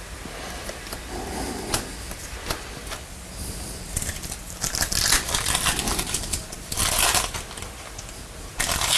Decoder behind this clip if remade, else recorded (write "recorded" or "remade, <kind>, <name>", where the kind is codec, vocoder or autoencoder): recorded